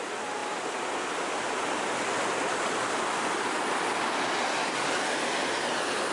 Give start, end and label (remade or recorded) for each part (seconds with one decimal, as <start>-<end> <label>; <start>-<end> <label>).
0.0-6.1 recorded